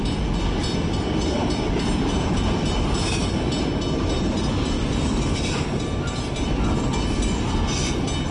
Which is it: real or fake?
real